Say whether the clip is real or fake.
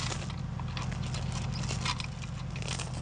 real